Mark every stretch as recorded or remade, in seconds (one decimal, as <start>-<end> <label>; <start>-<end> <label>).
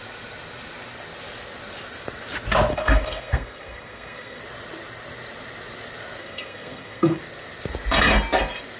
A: 0.0-2.7 recorded; 2.7-4.4 remade; 4.4-6.2 recorded; 6.2-7.2 remade; 7.2-8.8 recorded